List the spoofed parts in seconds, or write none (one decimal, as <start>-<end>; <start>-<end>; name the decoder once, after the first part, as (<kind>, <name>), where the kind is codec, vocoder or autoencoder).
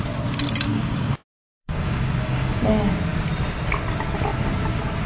0.7-2.7 (codec, DAC)